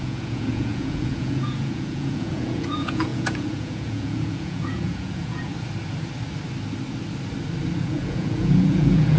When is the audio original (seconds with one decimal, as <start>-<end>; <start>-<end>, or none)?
5.5-7.8